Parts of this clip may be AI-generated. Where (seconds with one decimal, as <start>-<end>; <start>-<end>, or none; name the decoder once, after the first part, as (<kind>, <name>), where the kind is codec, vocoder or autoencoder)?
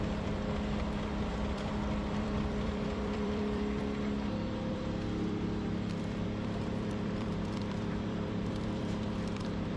0.0-3.8 (vocoder, BigVGAN v2); 4.7-9.8